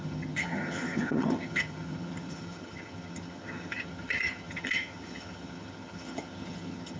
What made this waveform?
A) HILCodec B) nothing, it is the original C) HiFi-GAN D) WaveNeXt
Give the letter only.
C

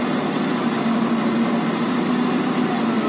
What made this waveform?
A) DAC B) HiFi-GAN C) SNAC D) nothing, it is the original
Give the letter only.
D